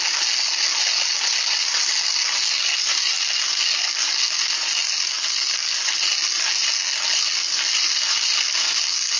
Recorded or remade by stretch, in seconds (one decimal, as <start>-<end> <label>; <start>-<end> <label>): 0.0-9.2 recorded